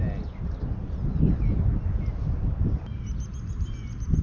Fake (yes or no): no